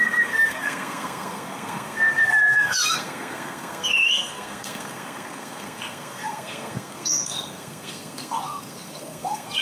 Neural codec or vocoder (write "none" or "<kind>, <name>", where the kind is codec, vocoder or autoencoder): codec, SNAC